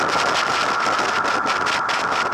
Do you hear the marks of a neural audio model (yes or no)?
no